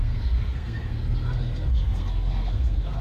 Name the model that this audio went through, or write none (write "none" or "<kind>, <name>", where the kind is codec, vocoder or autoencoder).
codec, SNAC